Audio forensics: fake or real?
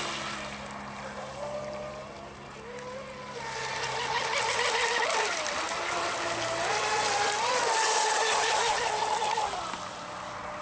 real